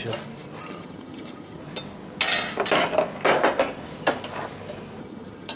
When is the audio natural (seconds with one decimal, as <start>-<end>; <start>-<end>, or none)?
0.0-0.6; 1.6-5.0